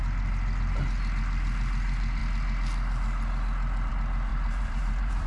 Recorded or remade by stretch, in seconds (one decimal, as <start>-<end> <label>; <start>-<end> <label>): 0.0-4.3 recorded; 4.3-5.3 remade

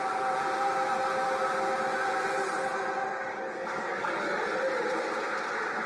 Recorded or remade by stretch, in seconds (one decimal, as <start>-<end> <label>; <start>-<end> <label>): 0.0-3.1 recorded; 3.1-4.5 remade; 4.5-5.9 recorded

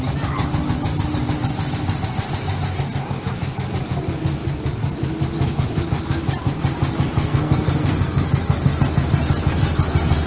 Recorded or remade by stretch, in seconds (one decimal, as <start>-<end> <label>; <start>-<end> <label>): 0.0-7.1 recorded; 7.1-8.8 remade; 8.8-10.3 recorded

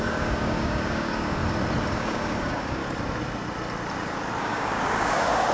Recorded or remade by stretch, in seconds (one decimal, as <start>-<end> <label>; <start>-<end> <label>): 0.0-1.4 remade; 1.4-1.9 recorded; 1.9-2.8 remade; 2.8-4.4 recorded; 4.4-5.5 remade